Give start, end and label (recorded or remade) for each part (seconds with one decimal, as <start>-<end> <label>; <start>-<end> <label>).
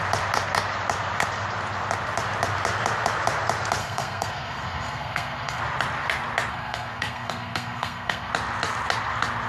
0.0-3.8 recorded; 3.8-5.6 remade; 5.6-6.5 recorded; 6.5-8.3 remade; 8.3-9.5 recorded